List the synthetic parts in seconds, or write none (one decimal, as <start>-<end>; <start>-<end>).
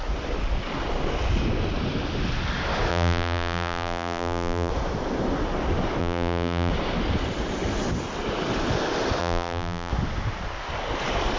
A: 2.9-4.7; 6.0-6.7; 9.2-9.9